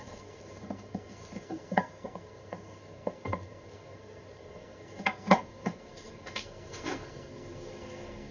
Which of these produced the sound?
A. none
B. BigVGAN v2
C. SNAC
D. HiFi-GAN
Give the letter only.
C